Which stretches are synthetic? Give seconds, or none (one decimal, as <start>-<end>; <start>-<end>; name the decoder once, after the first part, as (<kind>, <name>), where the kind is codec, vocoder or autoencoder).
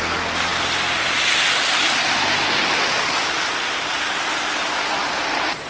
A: 5.0-5.7 (vocoder, BigVGAN v2)